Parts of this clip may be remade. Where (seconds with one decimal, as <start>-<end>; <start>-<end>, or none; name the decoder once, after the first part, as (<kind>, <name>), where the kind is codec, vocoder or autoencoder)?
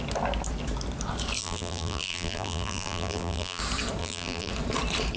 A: 1.4-3.6 (vocoder, BigVGAN v2); 4.0-4.5